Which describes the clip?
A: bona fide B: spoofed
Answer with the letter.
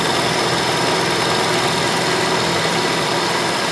A